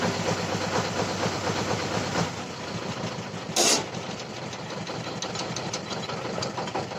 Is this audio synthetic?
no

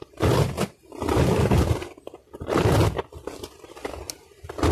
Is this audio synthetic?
no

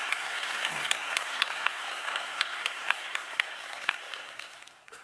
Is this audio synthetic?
yes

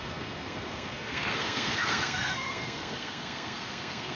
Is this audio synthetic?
yes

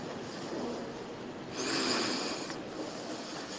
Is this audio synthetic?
no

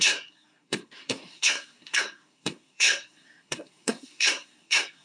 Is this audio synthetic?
yes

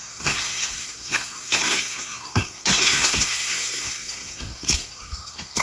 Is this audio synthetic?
yes